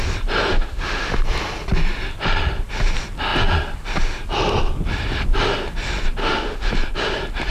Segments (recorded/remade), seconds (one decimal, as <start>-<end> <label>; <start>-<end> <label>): 0.0-0.5 recorded; 0.5-1.1 remade; 1.1-6.2 recorded; 6.2-6.7 remade; 6.7-7.5 recorded